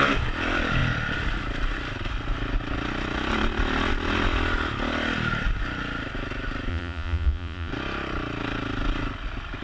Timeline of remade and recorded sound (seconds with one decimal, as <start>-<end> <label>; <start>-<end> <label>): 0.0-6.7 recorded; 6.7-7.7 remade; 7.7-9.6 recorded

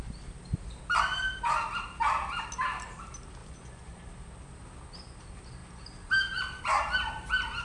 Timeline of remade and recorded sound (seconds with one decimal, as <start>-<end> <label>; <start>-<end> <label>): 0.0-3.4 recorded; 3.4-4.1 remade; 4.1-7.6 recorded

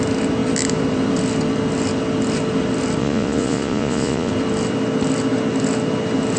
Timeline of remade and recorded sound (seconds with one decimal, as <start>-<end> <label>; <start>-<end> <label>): 0.0-3.0 recorded; 3.0-4.3 remade; 4.3-6.4 recorded

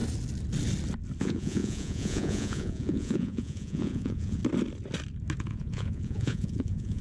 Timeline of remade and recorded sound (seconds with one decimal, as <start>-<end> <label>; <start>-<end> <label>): 0.0-1.2 recorded; 1.2-4.4 remade; 4.4-5.4 recorded; 5.4-7.0 remade

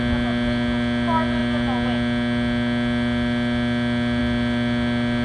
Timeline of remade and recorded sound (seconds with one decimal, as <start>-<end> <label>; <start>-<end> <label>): 0.0-5.2 recorded

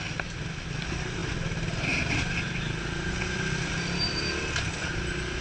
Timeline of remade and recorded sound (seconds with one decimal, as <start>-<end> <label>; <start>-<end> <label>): 0.0-5.4 recorded